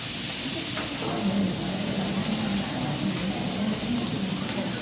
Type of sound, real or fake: real